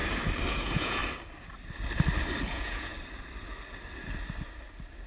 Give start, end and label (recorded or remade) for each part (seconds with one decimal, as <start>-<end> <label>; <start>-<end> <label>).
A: 0.0-0.5 recorded; 0.5-1.0 remade; 1.0-2.5 recorded; 2.5-2.9 remade; 2.9-5.1 recorded